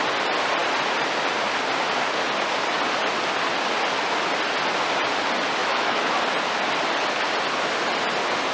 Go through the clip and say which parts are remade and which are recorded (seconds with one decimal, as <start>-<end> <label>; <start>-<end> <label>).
0.0-5.6 recorded; 5.6-6.2 remade; 6.2-8.5 recorded